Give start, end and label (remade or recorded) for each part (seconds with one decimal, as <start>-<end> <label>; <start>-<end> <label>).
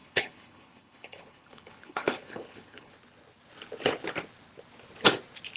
0.0-2.9 remade; 2.9-5.6 recorded